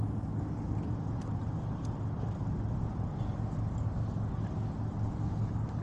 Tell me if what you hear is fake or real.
real